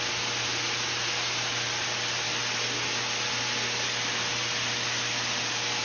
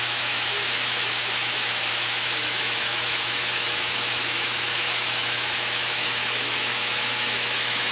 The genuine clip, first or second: first